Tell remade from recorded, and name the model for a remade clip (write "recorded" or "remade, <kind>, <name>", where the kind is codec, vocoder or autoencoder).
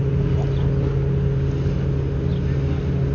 recorded